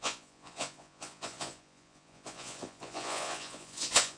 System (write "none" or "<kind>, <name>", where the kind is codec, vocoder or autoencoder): vocoder, Vocos